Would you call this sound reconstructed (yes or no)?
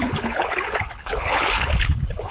yes